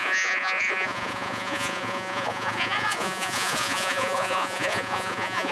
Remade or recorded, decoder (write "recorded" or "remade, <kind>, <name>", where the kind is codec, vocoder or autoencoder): remade, vocoder, Vocos